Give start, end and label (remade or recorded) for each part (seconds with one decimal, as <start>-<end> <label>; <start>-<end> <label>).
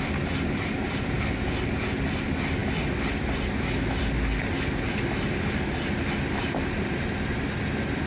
0.0-8.1 recorded